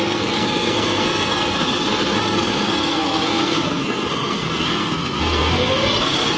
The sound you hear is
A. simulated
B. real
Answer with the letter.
A